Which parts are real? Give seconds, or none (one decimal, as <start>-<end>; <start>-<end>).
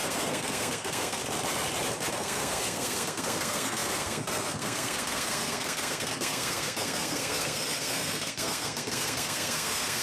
1.2-2.1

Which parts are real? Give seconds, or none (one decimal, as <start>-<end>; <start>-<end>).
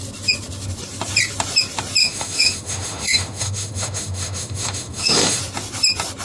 0.0-2.0; 5.4-6.2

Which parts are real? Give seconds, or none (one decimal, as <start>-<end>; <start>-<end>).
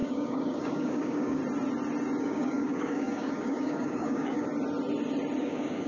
1.4-2.2; 4.5-5.4